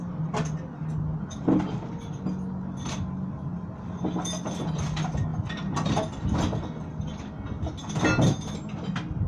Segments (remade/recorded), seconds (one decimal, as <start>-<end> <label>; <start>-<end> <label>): 0.0-9.3 recorded